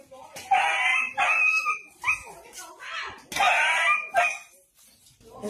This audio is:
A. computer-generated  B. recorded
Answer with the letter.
B